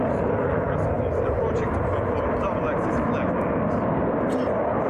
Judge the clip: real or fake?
real